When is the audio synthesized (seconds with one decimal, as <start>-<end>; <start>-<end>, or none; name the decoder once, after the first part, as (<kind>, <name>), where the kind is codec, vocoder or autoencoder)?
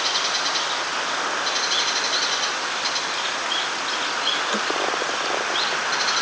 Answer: none